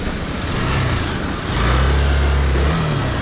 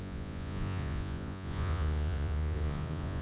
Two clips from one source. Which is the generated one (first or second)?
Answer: second